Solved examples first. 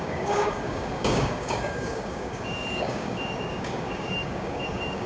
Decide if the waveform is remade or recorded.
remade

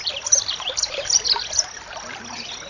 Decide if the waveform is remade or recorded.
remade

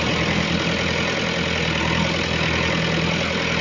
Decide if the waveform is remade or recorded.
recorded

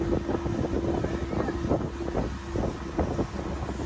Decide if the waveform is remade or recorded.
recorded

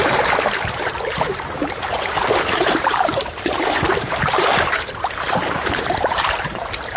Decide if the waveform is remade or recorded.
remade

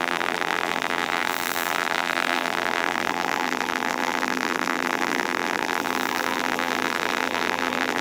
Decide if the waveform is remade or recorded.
remade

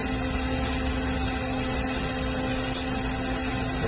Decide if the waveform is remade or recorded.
recorded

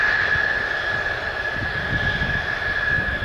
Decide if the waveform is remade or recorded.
recorded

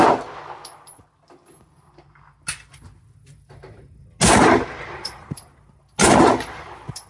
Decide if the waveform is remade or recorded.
recorded